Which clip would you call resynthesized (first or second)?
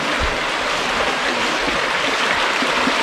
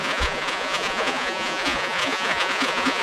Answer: second